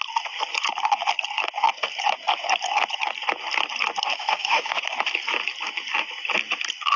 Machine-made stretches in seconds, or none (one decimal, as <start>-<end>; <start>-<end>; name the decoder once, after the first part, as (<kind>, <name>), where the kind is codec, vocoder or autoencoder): 4.1-4.8 (autoencoder, DAC-VAE)